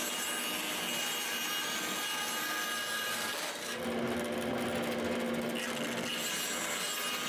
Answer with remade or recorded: recorded